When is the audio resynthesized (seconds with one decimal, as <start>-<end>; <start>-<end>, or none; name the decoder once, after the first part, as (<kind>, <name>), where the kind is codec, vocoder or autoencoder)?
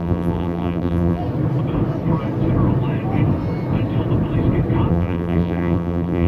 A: 0.0-1.2 (vocoder, BigVGAN v2); 4.9-6.3